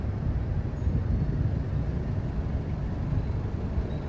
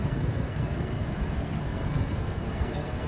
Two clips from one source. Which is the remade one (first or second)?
second